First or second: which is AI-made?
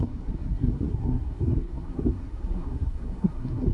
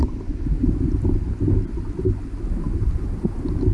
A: first